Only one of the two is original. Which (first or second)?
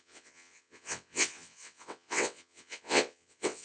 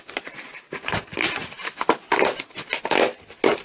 second